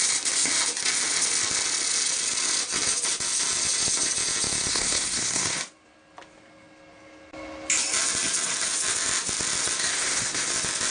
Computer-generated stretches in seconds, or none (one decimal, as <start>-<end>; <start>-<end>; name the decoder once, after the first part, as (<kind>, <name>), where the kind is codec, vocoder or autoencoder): 4.7-5.6 (codec, SNAC); 9.9-10.5